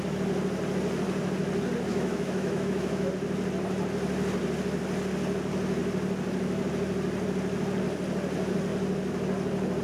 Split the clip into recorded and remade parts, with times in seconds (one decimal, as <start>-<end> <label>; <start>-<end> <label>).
0.0-1.9 recorded; 1.9-3.1 remade; 3.1-9.8 recorded